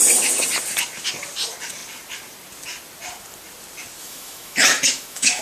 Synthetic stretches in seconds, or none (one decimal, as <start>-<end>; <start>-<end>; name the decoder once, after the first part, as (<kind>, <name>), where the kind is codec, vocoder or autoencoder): 4.0-5.4 (autoencoder, DAC-VAE)